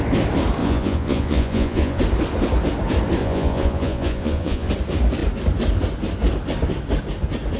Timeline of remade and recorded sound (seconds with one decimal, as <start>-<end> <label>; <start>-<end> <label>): 0.0-0.6 recorded; 0.6-2.0 remade; 2.0-3.2 recorded; 3.2-4.7 remade; 4.7-7.6 recorded